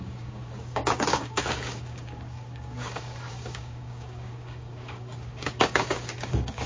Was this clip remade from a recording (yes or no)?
yes